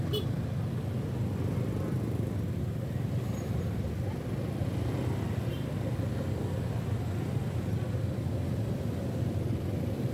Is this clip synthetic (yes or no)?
no